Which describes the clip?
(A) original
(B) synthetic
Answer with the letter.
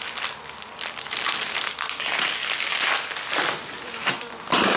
A